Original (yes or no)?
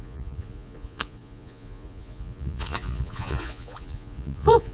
no